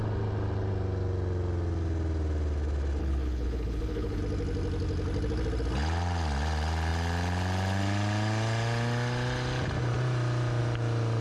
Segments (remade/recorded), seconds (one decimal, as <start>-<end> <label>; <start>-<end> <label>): 0.0-3.0 recorded; 3.0-4.2 remade; 4.2-11.2 recorded